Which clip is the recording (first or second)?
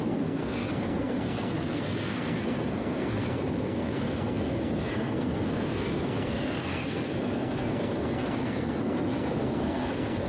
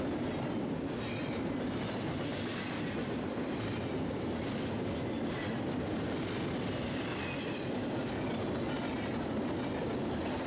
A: second